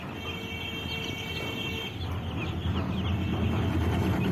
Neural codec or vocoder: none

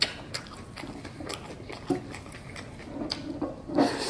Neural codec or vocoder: none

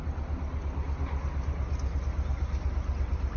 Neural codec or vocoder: none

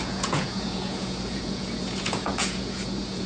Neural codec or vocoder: vocoder, Vocos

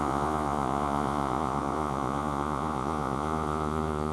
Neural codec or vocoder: vocoder, Vocos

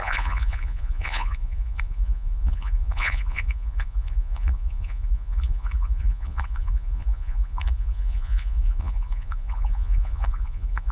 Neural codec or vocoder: vocoder, Vocos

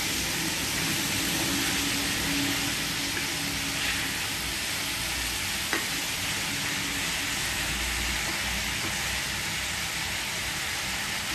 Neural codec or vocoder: none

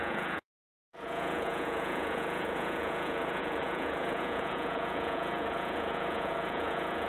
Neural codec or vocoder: vocoder, Vocos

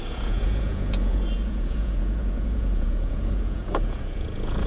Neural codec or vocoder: vocoder, Vocos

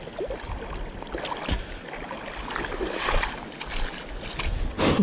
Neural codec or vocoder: none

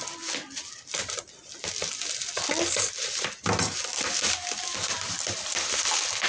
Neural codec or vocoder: none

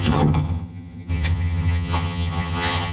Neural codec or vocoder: vocoder, HiFi-GAN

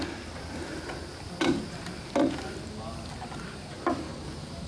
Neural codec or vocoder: none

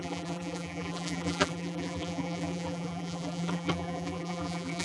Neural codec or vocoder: vocoder, BigVGAN v2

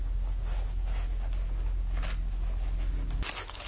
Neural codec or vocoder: none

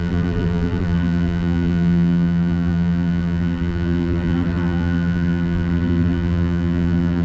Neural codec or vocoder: vocoder, BigVGAN v2